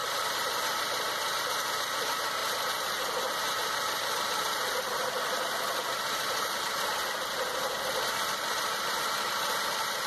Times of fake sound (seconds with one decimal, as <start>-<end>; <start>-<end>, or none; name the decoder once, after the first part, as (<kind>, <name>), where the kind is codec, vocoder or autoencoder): 0.0-0.6 (vocoder, BigVGAN v2)